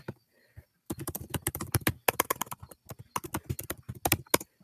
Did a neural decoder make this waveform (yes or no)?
no